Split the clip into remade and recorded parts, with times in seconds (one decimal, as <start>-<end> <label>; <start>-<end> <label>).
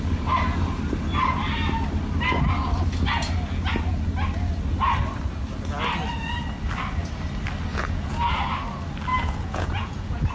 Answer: 0.0-7.7 recorded; 7.7-8.5 remade; 8.5-9.1 recorded; 9.1-10.3 remade